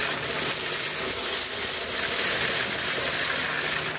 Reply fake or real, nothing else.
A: real